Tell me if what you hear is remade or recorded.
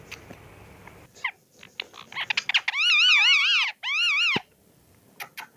recorded